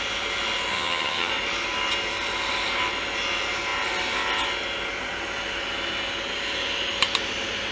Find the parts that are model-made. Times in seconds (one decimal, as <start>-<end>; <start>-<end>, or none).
0.7-1.3